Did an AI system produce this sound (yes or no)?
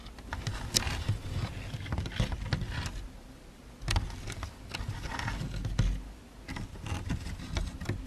no